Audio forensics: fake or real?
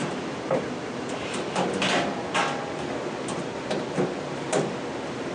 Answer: fake